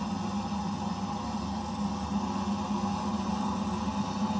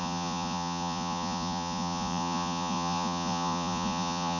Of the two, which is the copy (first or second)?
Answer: second